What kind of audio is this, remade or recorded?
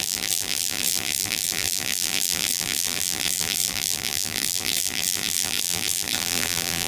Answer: remade